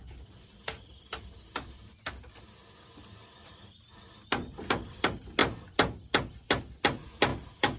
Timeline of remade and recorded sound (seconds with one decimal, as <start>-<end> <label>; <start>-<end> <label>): 0.0-7.8 recorded